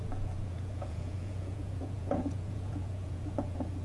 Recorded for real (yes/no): no